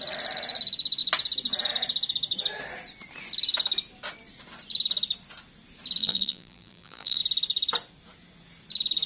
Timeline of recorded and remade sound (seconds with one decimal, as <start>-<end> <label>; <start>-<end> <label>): 0.0-6.0 recorded; 6.0-7.2 remade; 7.2-9.1 recorded